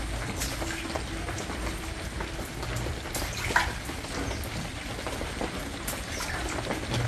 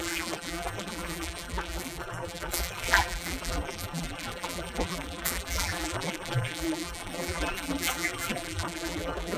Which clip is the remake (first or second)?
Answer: second